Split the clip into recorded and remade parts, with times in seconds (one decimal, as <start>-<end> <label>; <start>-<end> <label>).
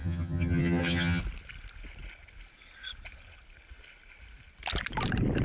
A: 0.0-1.2 remade; 1.2-5.4 recorded